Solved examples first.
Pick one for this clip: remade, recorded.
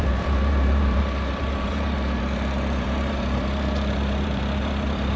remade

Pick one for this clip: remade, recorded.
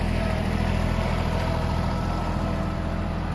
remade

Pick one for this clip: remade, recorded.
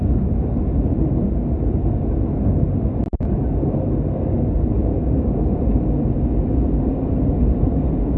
recorded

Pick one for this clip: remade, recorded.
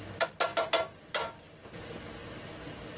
recorded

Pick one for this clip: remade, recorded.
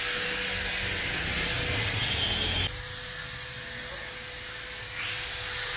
recorded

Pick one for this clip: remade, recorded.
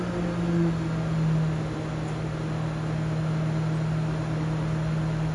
recorded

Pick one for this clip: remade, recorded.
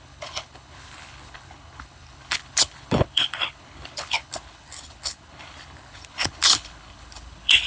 remade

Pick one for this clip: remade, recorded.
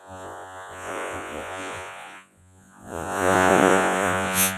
remade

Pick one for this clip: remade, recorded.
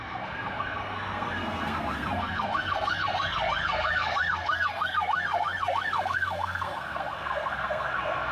remade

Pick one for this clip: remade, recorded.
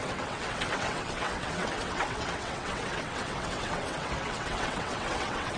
remade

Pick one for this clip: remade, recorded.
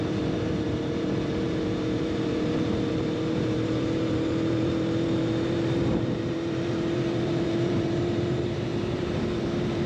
remade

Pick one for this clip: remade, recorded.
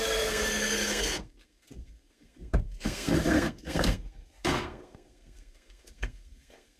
remade